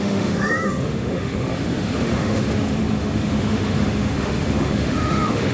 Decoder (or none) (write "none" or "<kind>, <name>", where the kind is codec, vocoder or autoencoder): autoencoder, DAC-VAE